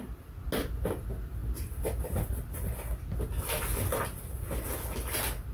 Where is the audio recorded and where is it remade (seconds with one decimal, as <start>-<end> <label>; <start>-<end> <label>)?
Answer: 0.0-5.5 recorded